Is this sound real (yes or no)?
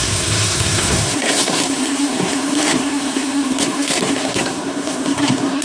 no